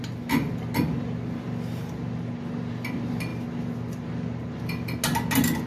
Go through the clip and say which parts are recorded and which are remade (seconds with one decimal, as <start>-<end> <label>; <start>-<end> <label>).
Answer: 0.0-5.7 recorded